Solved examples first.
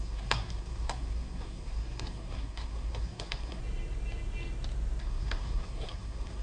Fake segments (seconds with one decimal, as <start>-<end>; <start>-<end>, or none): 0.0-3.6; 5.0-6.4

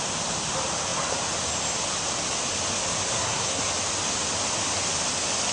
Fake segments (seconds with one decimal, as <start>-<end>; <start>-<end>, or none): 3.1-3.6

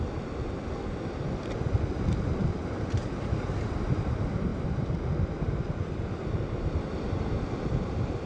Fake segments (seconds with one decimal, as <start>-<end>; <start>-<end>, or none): 3.0-4.1

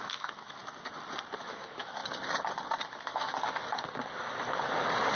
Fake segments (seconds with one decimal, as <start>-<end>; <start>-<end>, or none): 0.0-0.6; 1.4-2.0; 2.9-3.3

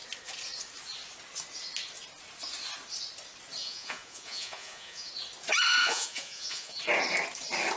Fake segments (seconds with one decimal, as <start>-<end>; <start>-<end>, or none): 3.6-5.1; 5.8-6.8

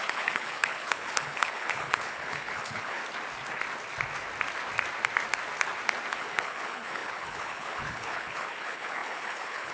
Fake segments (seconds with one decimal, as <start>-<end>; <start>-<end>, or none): 0.0-3.0; 6.1-9.7